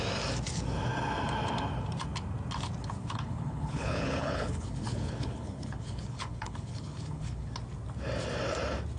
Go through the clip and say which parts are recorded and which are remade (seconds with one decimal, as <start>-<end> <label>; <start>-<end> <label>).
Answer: 0.0-3.0 recorded; 3.0-7.5 remade; 7.5-9.0 recorded